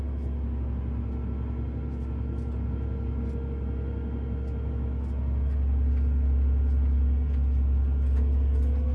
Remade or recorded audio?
recorded